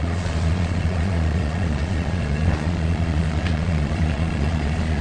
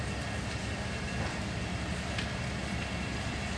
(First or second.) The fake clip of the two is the first